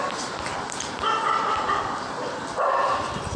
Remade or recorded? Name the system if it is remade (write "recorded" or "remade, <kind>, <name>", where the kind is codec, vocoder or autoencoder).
remade, vocoder, BigVGAN v2